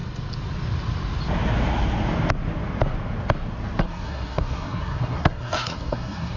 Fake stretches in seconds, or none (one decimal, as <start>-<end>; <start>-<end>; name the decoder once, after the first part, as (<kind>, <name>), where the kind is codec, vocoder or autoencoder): 3.8-6.4 (codec, SNAC)